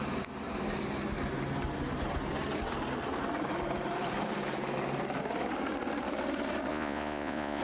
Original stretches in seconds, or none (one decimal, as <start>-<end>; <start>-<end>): 0.0-6.7

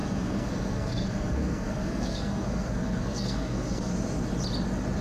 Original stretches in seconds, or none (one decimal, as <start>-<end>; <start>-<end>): 3.9-5.0